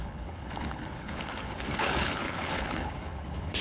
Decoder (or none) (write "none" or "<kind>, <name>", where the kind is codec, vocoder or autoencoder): codec, HILCodec